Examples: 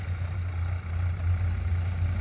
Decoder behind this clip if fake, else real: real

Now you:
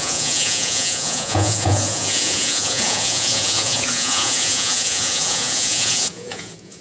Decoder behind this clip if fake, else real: fake, vocoder, Vocos